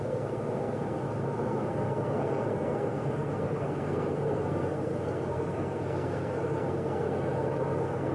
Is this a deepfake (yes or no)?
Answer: yes